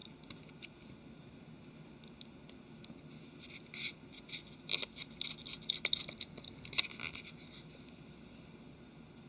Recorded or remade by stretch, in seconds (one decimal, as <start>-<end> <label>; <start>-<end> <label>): 0.0-9.3 recorded